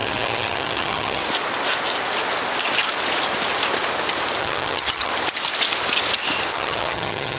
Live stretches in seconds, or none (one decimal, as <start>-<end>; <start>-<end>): 1.2-4.4; 5.1-6.5